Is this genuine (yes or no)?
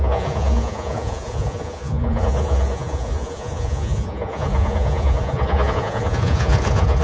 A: no